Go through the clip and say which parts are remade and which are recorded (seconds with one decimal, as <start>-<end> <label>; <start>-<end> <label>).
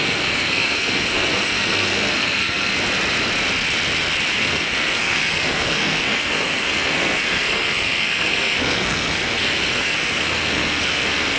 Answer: 0.0-2.7 remade; 2.7-4.3 recorded; 4.3-11.4 remade